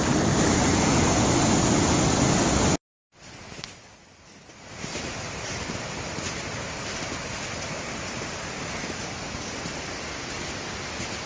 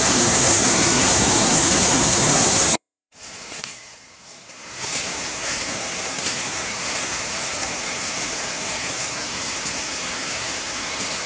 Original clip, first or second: first